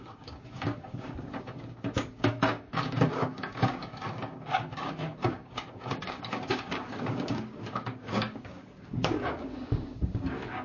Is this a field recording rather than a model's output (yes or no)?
no